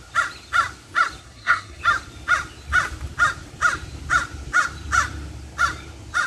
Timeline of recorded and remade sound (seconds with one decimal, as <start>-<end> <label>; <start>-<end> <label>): 0.0-1.2 recorded; 1.2-1.8 remade; 1.8-6.3 recorded